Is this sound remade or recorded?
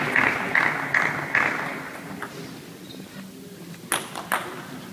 recorded